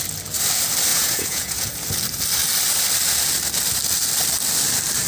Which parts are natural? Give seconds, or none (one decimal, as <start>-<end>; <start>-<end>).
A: 0.0-0.9; 1.7-5.1